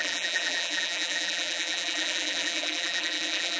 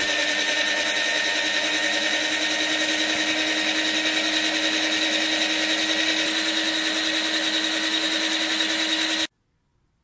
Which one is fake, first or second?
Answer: first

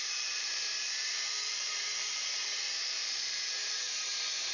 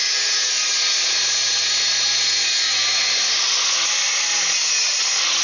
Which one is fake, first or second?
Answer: first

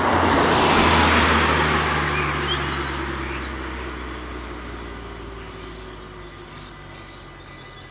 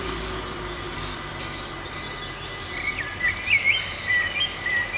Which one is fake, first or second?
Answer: second